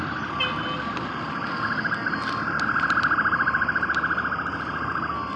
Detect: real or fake real